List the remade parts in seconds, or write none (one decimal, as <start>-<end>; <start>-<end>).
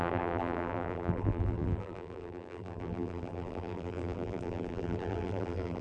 0.0-5.8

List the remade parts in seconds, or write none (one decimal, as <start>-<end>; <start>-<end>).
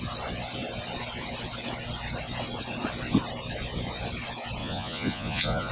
4.6-5.7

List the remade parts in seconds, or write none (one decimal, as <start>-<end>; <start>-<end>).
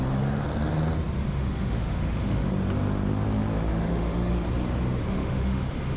1.3-2.5; 3.7-4.3; 5.0-6.0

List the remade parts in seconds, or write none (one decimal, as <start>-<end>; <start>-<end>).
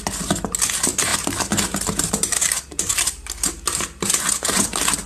1.1-4.2